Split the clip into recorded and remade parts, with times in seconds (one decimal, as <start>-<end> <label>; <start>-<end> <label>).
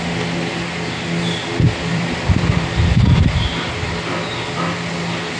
0.0-1.9 recorded; 1.9-3.2 remade; 3.2-5.4 recorded